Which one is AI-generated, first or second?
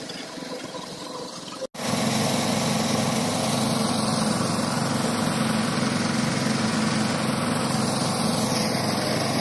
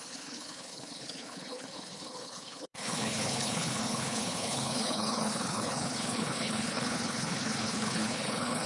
second